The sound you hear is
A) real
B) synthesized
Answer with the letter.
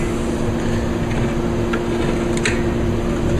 A